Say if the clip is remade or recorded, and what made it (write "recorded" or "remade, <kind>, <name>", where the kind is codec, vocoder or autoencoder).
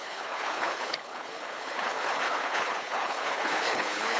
remade, codec, HILCodec